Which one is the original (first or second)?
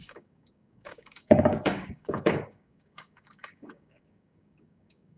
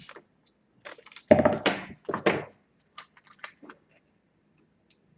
second